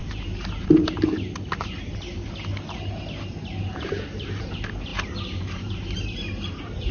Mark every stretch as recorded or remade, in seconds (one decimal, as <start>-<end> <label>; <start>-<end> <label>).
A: 0.0-0.9 remade; 0.9-3.7 recorded; 3.7-4.4 remade; 4.4-4.9 recorded; 4.9-6.9 remade

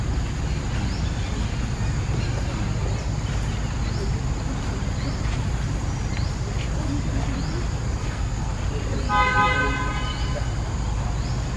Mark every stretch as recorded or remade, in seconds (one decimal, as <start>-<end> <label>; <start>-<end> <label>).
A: 0.0-8.0 recorded; 8.0-8.5 remade; 8.5-11.6 recorded

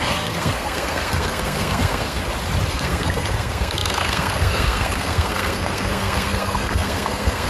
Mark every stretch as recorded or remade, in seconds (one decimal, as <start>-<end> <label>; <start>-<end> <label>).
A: 0.0-2.2 remade; 2.2-2.7 recorded; 2.7-7.5 remade